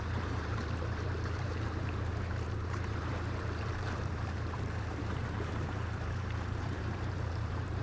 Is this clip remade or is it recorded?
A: remade